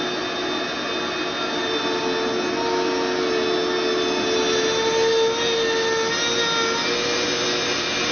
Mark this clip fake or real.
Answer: real